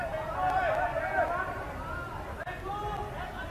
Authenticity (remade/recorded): recorded